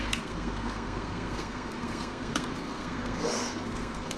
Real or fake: fake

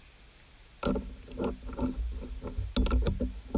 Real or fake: real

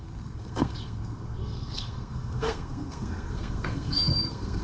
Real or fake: fake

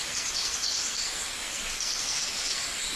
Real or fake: fake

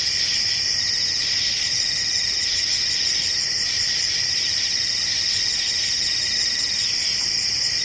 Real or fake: real